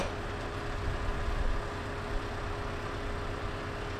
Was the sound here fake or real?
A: real